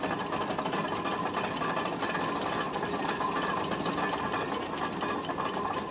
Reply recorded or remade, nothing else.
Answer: recorded